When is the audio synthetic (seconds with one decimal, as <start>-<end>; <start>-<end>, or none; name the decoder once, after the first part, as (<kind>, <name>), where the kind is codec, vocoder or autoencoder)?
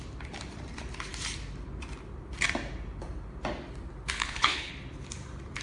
4.2-4.7 (codec, HILCodec)